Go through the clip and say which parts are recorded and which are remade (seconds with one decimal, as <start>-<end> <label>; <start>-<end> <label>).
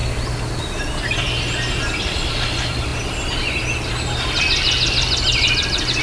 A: 0.0-6.0 recorded